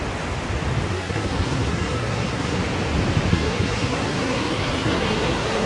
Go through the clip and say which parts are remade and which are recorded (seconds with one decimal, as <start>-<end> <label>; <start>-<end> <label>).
0.0-0.9 recorded; 0.9-2.6 remade; 2.6-3.3 recorded; 3.3-5.7 remade